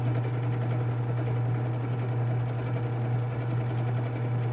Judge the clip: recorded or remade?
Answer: recorded